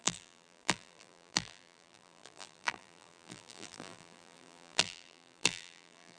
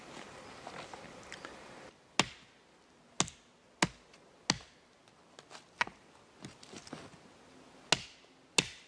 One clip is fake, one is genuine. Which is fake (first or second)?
first